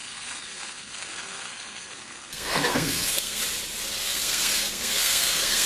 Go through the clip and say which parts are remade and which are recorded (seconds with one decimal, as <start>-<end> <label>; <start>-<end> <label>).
0.0-3.4 remade; 3.4-4.0 recorded; 4.0-5.7 remade